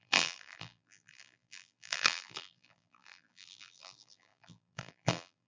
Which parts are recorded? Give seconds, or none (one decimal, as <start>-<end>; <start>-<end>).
none